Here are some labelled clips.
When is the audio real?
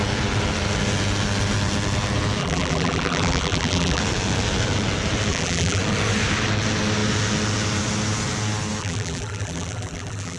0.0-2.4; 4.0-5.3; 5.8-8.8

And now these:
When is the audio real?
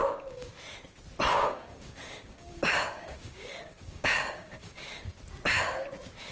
0.5-1.3; 5.1-6.3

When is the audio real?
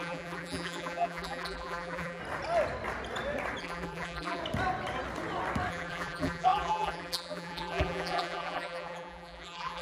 2.2-3.6; 4.4-5.7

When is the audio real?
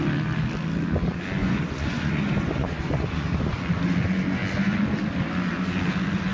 0.0-1.4; 3.6-6.3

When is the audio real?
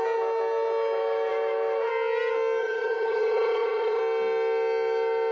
0.0-2.6; 4.0-5.3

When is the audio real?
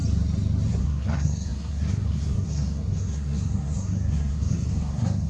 0.0-0.8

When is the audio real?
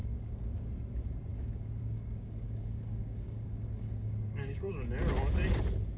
0.7-1.3; 4.7-6.0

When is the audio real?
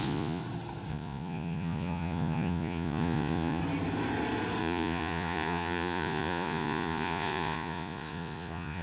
0.4-0.9; 3.6-4.6